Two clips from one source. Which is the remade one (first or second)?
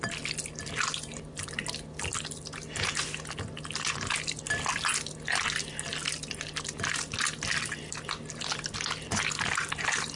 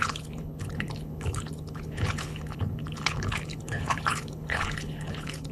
second